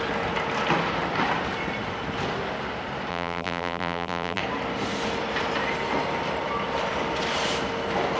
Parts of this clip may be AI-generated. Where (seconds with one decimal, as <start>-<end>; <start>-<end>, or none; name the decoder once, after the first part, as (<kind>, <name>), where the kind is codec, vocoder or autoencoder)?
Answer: 3.1-4.4 (vocoder, BigVGAN v2)